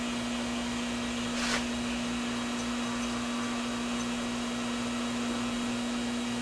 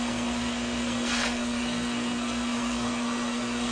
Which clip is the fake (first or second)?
second